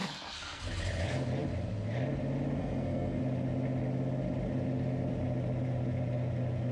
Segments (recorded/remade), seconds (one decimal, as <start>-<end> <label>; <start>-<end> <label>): 0.0-0.6 remade; 0.6-2.6 recorded; 2.6-3.2 remade; 3.2-6.7 recorded